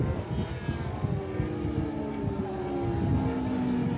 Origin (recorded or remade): recorded